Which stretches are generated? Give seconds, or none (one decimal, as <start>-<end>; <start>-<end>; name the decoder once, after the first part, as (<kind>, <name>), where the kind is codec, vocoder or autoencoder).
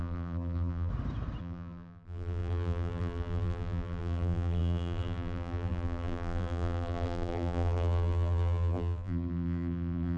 0.0-0.9 (vocoder, BigVGAN v2); 1.4-10.2